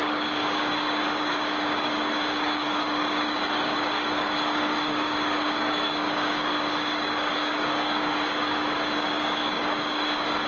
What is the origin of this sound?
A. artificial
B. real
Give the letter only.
A